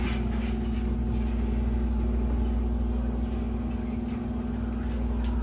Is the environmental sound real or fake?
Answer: real